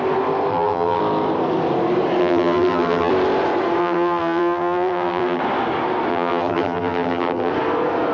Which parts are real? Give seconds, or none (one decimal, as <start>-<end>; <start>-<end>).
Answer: 0.0-0.5; 1.0-2.2; 3.1-3.8; 5.4-6.1; 7.5-8.1